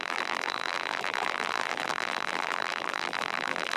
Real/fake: fake